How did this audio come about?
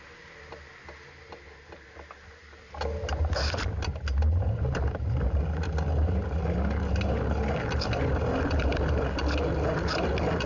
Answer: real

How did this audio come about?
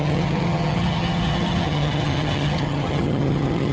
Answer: fake